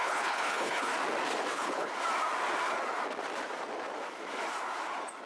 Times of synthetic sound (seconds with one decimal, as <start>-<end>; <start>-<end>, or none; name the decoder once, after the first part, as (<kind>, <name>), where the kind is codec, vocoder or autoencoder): 0.0-0.9 (codec, HILCodec); 1.5-1.9